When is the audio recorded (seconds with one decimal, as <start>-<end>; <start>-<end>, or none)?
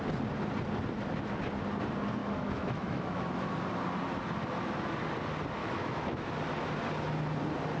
0.0-2.2; 3.5-5.6; 6.3-7.8